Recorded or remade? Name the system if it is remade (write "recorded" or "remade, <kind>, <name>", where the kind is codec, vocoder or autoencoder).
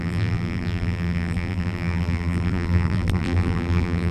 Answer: remade, vocoder, BigVGAN v2